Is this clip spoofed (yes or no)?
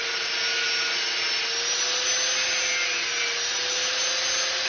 no